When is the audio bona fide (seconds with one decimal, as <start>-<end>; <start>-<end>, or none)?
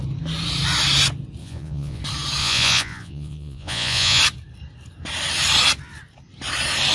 0.0-1.4; 2.0-2.4; 4.2-6.9